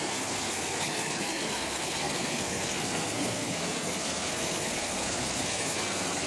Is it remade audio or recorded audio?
remade